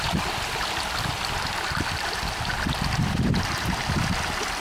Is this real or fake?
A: real